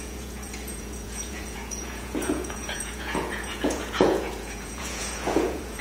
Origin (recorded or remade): remade